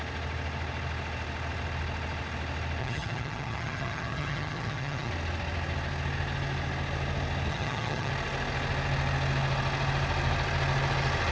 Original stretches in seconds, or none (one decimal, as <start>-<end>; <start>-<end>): 0.0-2.8; 5.1-7.5; 8.1-11.3

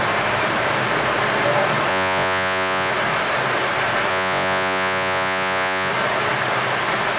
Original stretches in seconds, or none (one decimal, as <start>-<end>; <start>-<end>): 0.0-1.9; 2.9-4.1; 5.9-7.2

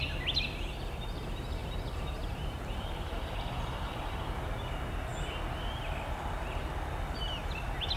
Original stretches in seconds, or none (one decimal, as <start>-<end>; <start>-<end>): 0.0-1.6; 4.4-8.0